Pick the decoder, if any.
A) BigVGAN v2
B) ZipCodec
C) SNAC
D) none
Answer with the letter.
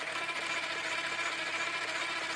D